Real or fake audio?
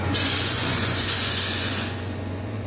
fake